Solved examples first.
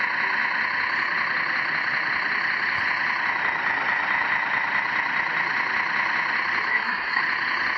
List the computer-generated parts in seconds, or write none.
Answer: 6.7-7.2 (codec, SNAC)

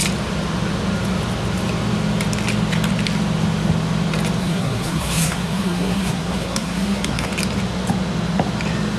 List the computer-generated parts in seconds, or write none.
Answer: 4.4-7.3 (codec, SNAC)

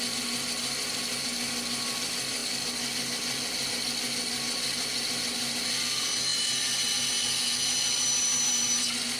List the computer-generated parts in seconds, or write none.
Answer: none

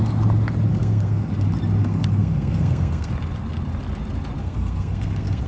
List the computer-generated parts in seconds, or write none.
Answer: 0.7-1.3 (codec, SNAC); 1.8-3.1; 4.4-5.5

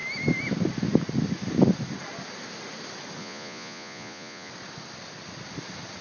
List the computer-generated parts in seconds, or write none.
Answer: 3.2-4.5 (vocoder, Vocos)

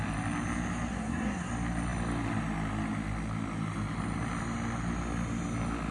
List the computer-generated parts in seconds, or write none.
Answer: 0.9-1.5 (codec, SNAC)